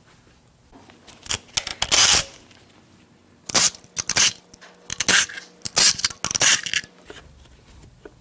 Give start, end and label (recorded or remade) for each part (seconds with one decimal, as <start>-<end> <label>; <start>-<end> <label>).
0.0-8.2 recorded